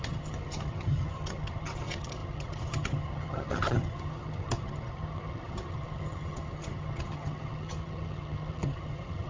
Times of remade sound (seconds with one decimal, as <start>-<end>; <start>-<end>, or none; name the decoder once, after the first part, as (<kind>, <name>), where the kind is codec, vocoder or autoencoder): 0.0-9.3 (vocoder, HiFi-GAN)